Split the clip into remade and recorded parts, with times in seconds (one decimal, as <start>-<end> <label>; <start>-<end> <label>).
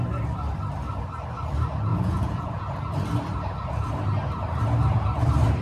0.0-1.9 recorded; 1.9-2.6 remade; 2.6-5.6 recorded